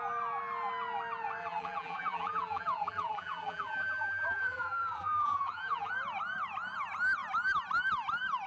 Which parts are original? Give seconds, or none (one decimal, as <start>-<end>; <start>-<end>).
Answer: 0.0-1.4; 5.9-8.5